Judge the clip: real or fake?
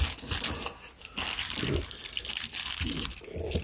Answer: real